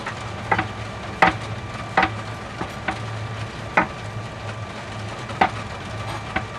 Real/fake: real